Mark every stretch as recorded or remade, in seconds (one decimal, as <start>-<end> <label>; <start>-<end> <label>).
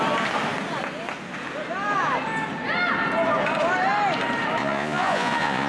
0.0-4.6 recorded; 4.6-5.7 remade